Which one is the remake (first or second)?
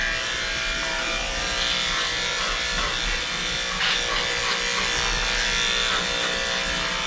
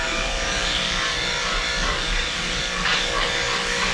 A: second